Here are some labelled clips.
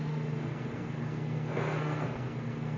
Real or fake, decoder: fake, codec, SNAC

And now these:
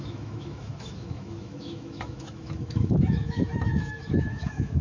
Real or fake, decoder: fake, autoencoder, DAC-VAE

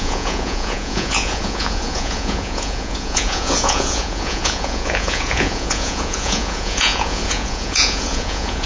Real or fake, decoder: fake, vocoder, Vocos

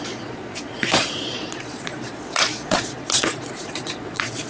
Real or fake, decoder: fake, vocoder, Vocos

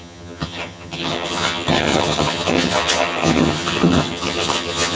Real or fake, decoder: fake, vocoder, HiFi-GAN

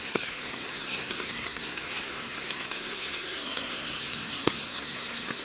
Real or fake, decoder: fake, codec, SNAC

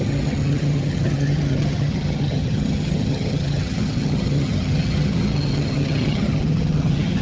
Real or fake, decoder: fake, vocoder, HiFi-GAN